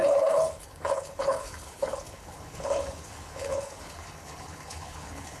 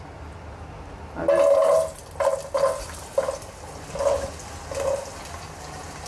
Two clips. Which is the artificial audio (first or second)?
first